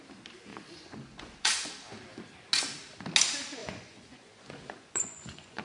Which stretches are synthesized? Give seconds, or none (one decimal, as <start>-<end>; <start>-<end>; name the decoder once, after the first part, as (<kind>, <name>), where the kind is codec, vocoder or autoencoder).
0.5-1.7 (vocoder, Vocos); 3.6-5.6